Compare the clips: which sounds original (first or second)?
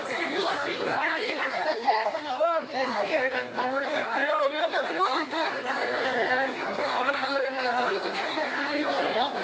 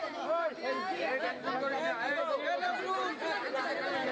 second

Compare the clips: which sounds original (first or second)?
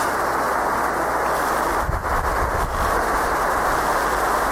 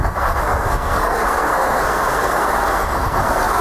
first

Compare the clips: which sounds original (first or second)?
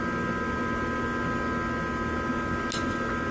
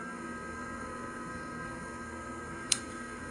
first